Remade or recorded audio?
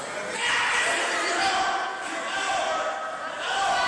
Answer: recorded